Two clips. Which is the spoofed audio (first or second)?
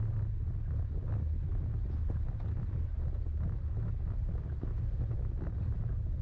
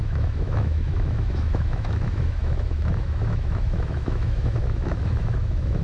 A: second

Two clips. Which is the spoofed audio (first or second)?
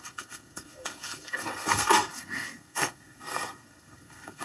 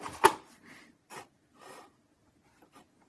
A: first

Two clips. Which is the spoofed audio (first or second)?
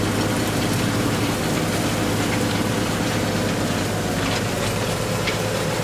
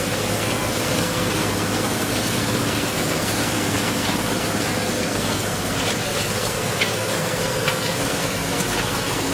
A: second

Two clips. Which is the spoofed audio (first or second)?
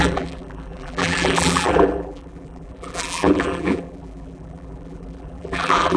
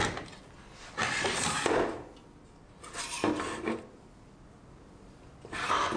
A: first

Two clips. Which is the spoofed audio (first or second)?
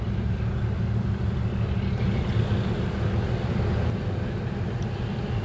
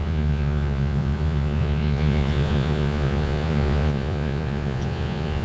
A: second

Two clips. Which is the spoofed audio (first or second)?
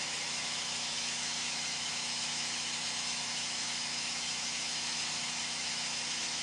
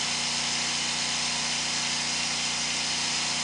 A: first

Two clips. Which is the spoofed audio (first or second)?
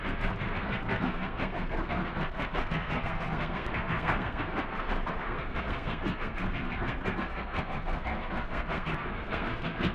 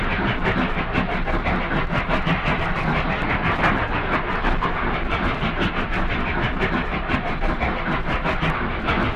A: first